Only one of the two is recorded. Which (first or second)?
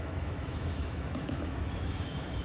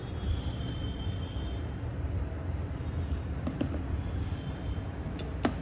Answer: second